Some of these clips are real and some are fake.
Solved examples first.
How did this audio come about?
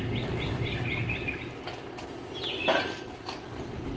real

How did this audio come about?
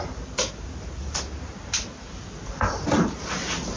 real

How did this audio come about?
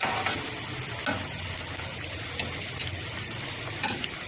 real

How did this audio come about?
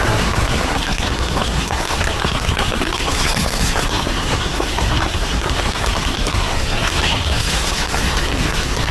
fake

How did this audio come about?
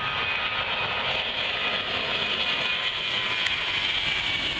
real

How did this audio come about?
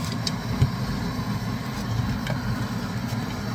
real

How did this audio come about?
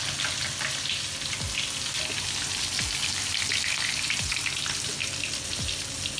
real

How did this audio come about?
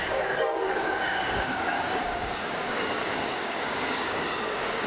fake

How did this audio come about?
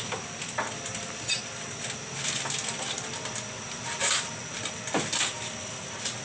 real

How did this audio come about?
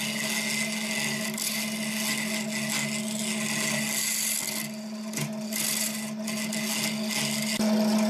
real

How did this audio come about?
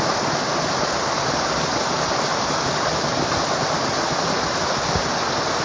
real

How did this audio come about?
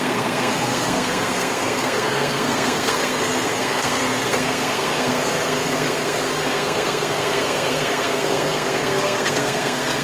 fake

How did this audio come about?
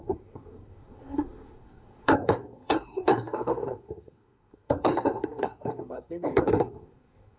fake